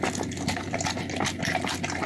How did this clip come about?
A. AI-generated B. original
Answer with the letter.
B